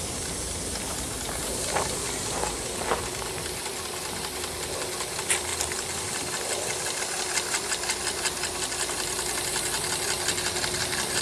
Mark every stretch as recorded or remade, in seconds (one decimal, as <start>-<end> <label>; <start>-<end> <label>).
0.0-11.2 recorded

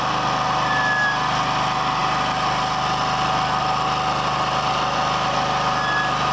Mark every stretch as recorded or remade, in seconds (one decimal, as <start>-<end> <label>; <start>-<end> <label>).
0.0-6.3 recorded